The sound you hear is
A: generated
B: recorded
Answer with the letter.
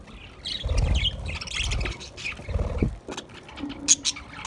B